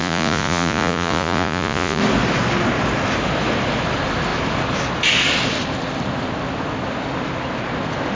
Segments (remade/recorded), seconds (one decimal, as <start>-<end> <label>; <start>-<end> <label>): 0.0-2.0 remade; 2.0-8.1 recorded